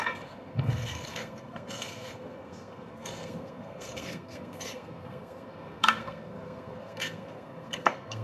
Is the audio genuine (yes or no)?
no